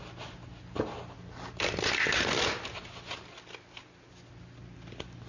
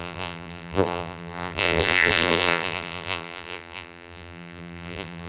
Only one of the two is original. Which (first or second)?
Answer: first